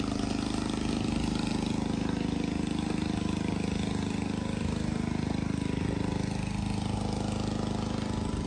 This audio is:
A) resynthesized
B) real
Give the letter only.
B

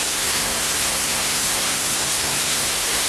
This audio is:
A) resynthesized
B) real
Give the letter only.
A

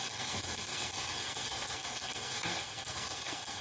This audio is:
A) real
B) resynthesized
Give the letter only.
B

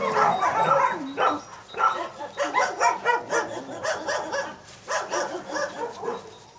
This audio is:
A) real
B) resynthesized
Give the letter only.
A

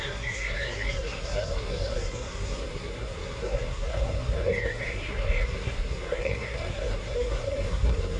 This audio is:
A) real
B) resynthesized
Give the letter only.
B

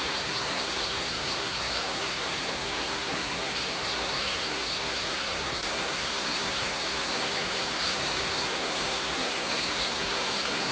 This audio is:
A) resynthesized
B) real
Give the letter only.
A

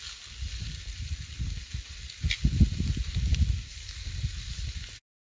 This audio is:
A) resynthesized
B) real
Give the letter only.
B